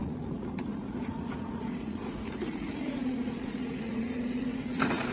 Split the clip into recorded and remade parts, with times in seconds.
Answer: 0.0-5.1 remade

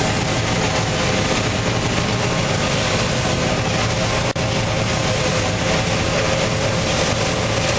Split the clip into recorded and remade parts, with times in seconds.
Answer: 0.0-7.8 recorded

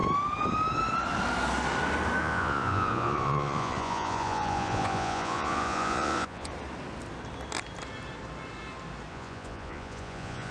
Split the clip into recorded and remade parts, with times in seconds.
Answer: 0.0-2.2 recorded; 2.2-6.5 remade; 6.5-9.1 recorded; 9.1-10.5 remade